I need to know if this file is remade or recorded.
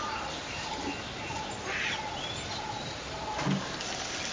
recorded